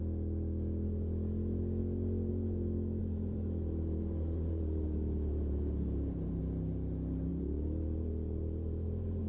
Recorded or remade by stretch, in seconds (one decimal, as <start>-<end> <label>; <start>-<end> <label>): 0.0-3.0 recorded; 3.0-6.4 remade; 6.4-7.3 recorded; 7.3-9.3 remade